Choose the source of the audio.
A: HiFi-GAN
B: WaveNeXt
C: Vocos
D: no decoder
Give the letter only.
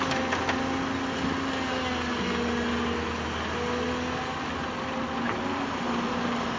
D